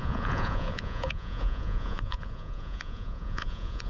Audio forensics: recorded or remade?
remade